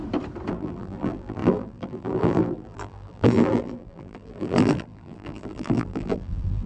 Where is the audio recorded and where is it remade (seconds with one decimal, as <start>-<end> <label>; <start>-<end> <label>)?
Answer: 0.0-0.5 recorded; 0.5-6.7 remade